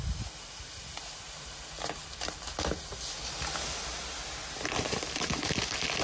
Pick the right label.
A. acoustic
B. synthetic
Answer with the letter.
A